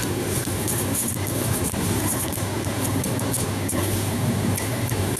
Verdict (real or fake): fake